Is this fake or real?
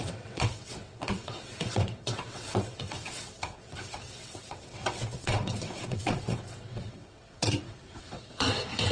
fake